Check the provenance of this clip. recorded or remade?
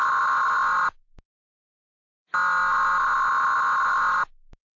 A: recorded